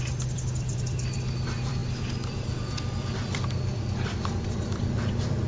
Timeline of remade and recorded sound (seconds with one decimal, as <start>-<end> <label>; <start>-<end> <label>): 0.0-5.5 remade